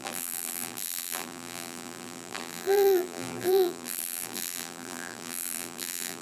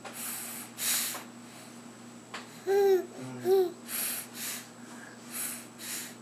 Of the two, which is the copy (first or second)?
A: first